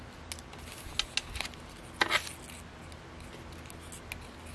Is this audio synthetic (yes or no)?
no